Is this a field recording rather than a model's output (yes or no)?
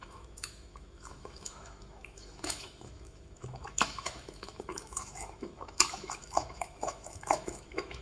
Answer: no